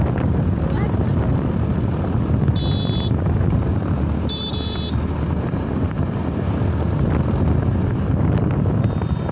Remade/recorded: recorded